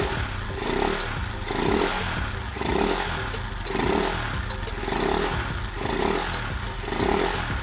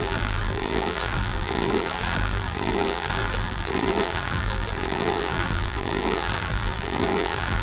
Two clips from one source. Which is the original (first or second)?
first